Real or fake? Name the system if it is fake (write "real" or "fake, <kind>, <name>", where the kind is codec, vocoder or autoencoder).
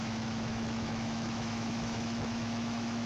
fake, autoencoder, DAC-VAE